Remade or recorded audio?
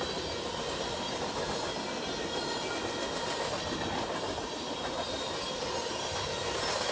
recorded